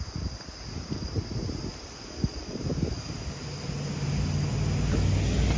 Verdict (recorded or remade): recorded